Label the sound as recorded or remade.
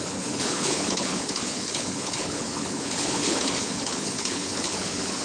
remade